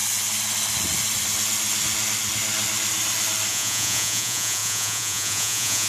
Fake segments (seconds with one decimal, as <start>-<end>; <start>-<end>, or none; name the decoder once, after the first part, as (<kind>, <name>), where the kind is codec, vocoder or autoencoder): 3.5-5.9 (vocoder, Vocos)